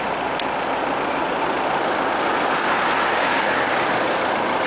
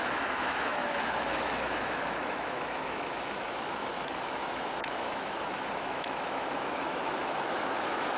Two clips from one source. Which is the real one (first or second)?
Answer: first